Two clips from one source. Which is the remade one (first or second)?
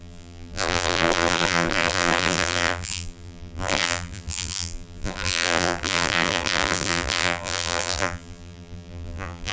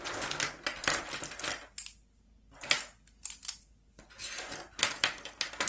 first